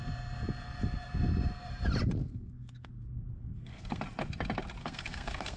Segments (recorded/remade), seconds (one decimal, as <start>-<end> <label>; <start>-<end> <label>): 0.0-2.2 recorded; 2.2-2.9 remade; 2.9-3.4 recorded; 3.4-4.0 remade; 4.0-4.8 recorded; 4.8-5.6 remade